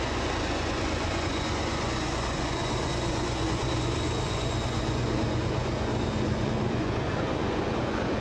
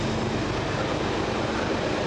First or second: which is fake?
first